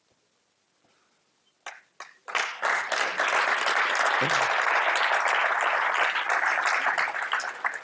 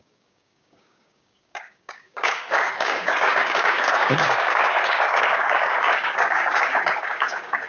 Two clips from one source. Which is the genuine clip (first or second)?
first